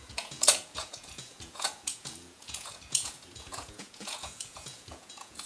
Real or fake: fake